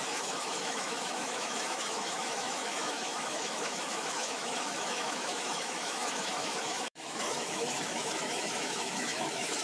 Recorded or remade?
remade